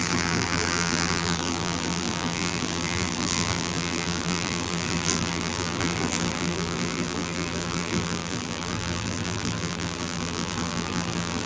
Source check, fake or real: fake